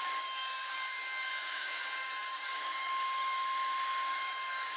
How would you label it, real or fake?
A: fake